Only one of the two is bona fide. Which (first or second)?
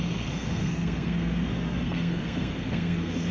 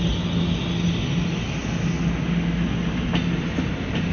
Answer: second